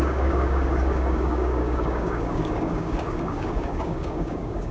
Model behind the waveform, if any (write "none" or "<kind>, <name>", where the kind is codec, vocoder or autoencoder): codec, DAC